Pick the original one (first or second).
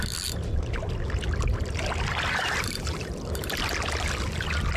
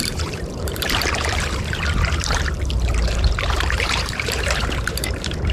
first